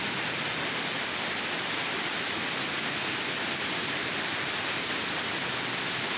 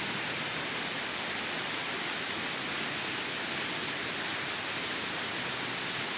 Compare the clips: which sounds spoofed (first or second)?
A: first